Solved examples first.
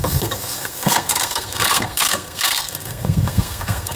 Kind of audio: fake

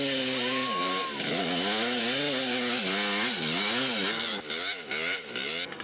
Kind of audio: real